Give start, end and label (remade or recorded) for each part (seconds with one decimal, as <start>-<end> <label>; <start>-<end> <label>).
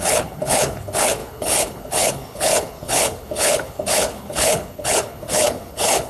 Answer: 0.0-6.1 remade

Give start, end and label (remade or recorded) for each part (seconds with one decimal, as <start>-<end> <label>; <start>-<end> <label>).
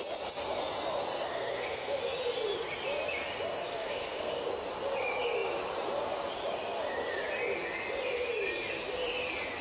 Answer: 0.0-1.3 recorded; 1.3-2.0 remade; 2.0-3.7 recorded; 3.7-4.5 remade; 4.5-9.6 recorded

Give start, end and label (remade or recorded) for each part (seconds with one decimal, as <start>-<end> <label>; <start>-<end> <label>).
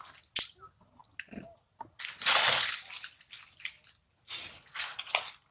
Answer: 0.0-5.5 recorded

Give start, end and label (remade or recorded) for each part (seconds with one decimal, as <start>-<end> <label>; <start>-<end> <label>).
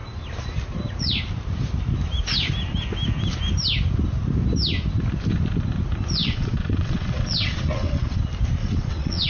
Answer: 0.0-6.2 recorded; 6.2-8.2 remade; 8.2-8.6 recorded; 8.6-9.3 remade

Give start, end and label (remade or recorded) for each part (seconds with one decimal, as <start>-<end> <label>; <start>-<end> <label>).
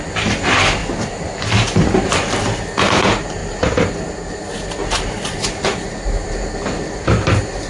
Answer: 0.0-0.8 recorded; 0.8-1.3 remade; 1.3-4.8 recorded; 4.8-6.4 remade; 6.4-7.7 recorded